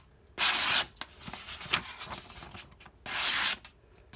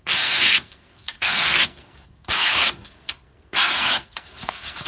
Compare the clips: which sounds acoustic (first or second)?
first